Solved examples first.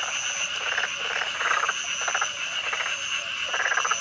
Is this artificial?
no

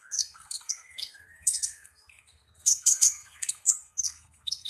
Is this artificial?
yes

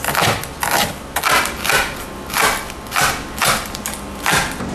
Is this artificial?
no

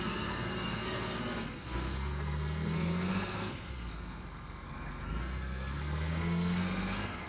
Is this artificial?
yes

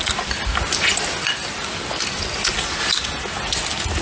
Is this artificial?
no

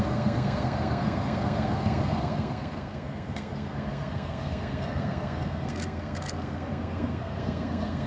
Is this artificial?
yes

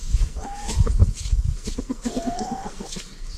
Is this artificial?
yes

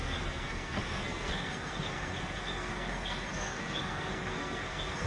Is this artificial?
yes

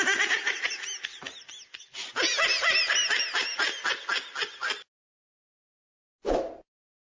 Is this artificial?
no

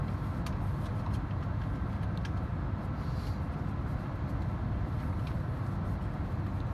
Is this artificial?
no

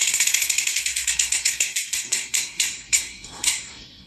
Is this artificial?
yes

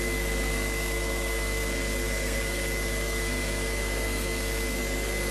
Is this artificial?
yes